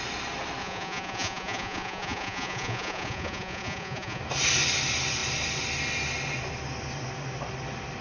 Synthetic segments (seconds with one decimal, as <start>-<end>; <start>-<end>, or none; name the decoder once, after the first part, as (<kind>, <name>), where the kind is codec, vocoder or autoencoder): 0.6-4.2 (vocoder, Vocos)